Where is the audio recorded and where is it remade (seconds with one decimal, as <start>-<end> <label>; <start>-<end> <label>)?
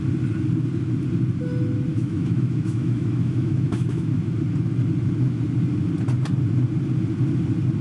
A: 0.0-1.9 recorded; 1.9-4.2 remade; 4.2-7.8 recorded